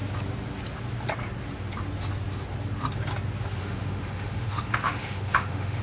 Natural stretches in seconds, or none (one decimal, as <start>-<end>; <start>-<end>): 0.0-3.6